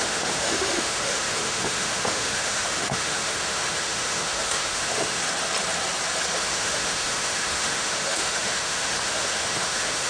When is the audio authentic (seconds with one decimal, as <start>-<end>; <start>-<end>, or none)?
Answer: 5.2-6.4